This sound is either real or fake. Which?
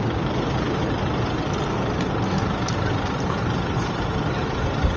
real